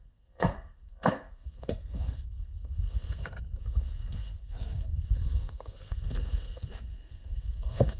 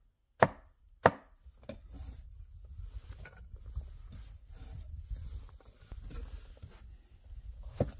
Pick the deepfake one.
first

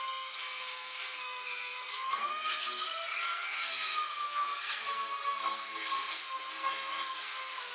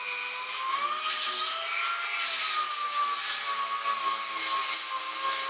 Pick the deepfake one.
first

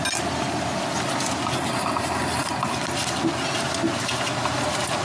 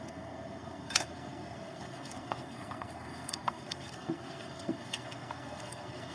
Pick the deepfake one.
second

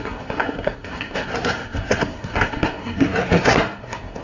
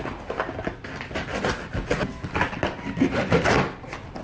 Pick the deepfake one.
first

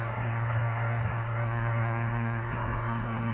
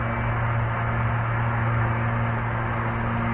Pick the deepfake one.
first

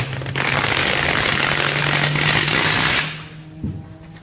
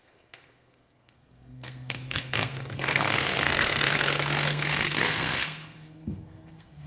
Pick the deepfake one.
second